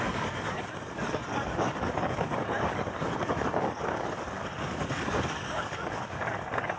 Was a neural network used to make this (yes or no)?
yes